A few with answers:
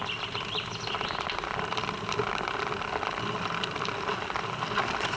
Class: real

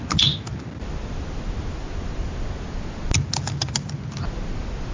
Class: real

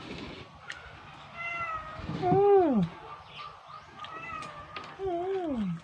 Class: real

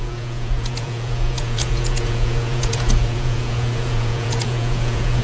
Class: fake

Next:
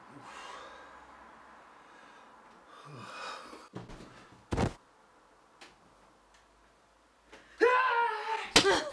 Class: real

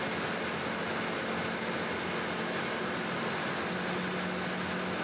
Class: real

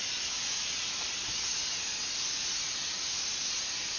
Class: real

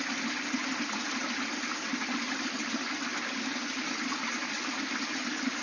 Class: real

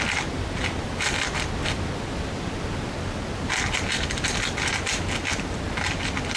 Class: real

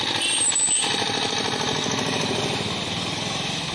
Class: real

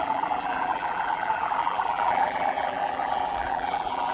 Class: fake